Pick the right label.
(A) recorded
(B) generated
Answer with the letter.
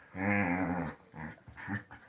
A